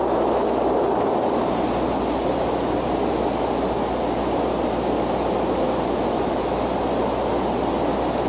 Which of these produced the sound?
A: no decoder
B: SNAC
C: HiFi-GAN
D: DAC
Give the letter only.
A